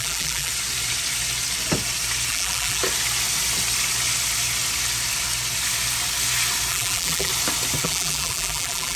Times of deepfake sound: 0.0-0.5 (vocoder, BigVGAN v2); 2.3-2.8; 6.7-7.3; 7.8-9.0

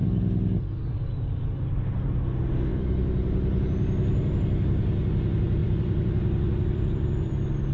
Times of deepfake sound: 2.7-4.4 (vocoder, BigVGAN v2); 5.6-7.3

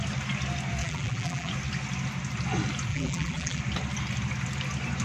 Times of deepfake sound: 0.8-1.5 (vocoder, BigVGAN v2); 2.9-3.6

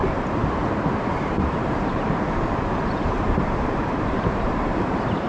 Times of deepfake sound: 1.1-5.3 (vocoder, BigVGAN v2)